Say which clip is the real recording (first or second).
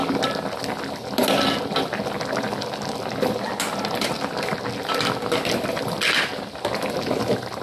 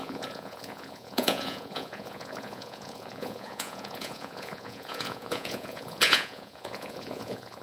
first